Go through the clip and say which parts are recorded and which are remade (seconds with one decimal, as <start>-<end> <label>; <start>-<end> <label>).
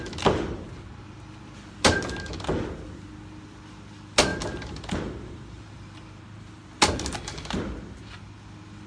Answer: 0.0-4.3 recorded; 4.3-6.5 remade; 6.5-8.9 recorded